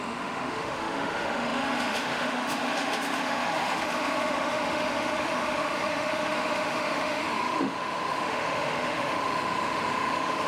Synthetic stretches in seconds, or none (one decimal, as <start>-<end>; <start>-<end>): 0.0-10.5